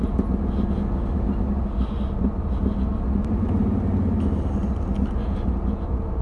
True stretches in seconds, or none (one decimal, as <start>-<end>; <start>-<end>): 0.0-6.2